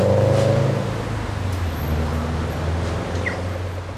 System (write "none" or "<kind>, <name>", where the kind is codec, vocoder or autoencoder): none